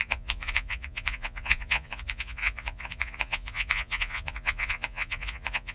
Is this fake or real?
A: fake